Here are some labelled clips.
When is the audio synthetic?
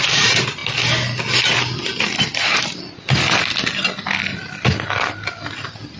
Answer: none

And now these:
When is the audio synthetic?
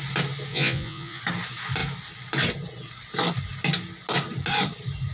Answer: 0.5-1.2 (vocoder, Vocos)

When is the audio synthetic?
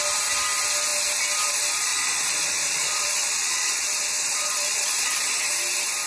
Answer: 1.9-5.5 (vocoder, Vocos)